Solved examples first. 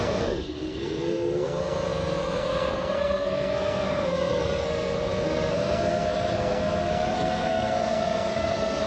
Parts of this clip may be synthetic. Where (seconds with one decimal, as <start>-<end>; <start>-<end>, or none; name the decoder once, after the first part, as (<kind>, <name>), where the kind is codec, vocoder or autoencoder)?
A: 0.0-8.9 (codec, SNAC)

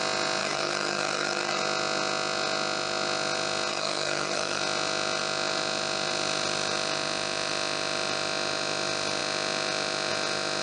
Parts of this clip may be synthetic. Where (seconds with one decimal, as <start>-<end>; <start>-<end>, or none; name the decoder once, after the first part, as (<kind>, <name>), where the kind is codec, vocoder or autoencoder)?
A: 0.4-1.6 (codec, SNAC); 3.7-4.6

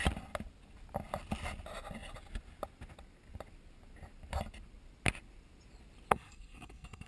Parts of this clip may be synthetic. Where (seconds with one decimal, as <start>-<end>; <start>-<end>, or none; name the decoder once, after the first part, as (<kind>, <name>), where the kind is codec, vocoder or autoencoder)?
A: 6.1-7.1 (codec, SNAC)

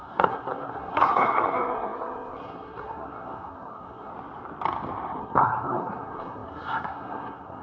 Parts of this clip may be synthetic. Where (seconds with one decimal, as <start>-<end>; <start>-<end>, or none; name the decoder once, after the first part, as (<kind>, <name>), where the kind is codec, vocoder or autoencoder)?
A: 0.0-4.1 (codec, SNAC); 5.2-7.6

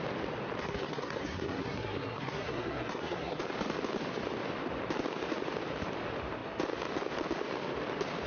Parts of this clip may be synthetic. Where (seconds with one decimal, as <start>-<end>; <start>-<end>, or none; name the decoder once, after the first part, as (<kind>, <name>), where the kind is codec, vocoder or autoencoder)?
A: 0.6-3.4 (codec, SNAC)